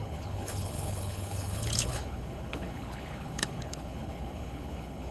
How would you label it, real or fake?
fake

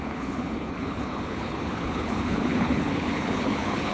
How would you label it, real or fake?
fake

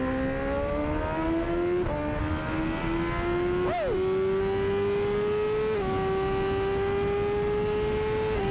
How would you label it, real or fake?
real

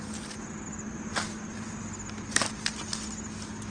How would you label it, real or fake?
real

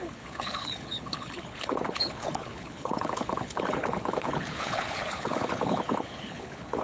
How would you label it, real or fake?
fake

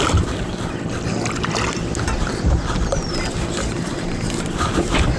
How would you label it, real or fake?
real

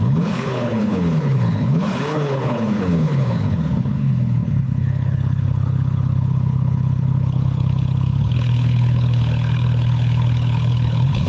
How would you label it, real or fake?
fake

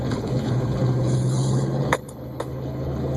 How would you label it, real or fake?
fake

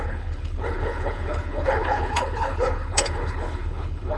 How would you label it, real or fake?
fake